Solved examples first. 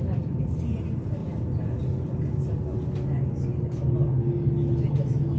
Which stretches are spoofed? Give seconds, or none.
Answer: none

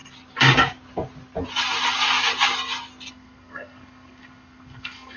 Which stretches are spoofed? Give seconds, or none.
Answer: 3.1-5.2 (codec, SNAC)